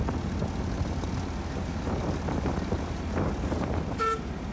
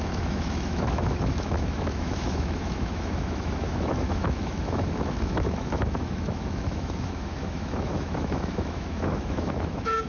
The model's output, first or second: second